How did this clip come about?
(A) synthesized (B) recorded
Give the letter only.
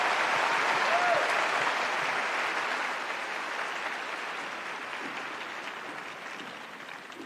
B